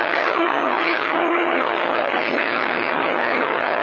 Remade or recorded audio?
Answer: remade